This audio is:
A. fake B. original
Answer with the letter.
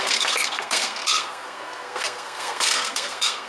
A